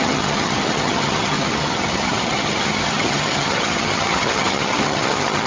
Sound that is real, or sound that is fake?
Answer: fake